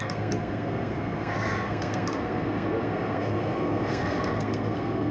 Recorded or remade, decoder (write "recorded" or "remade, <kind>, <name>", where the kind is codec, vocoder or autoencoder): remade, codec, SNAC